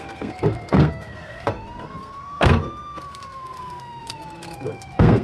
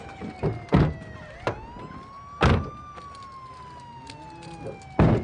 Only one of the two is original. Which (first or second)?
second